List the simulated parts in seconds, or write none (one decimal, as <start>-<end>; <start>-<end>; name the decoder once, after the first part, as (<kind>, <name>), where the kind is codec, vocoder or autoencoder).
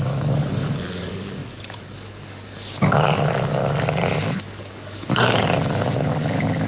0.0-3.6 (codec, DAC); 4.4-6.7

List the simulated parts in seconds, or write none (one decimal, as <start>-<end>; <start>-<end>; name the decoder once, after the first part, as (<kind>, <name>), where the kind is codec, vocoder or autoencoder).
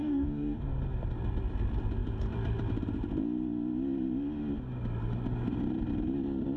0.0-0.6 (codec, DAC)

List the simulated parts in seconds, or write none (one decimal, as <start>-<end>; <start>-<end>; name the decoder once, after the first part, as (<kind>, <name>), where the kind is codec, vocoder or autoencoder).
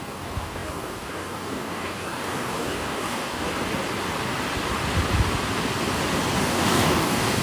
0.0-3.5 (codec, DAC); 6.4-7.4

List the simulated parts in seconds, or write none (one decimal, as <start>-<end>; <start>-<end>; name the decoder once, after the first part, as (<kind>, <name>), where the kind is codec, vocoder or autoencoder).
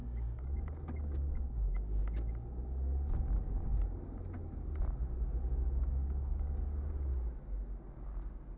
0.0-2.3 (codec, DAC); 6.0-6.9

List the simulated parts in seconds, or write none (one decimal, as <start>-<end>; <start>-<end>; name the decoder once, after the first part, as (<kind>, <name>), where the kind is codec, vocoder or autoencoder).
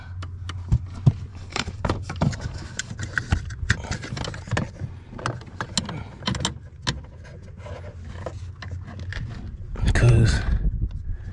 1.3-2.9 (codec, DAC)